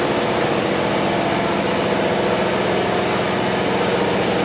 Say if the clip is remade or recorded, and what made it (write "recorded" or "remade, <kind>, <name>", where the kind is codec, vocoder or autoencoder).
recorded